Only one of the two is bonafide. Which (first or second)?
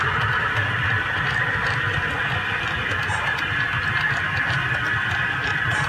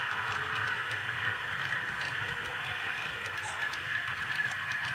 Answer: first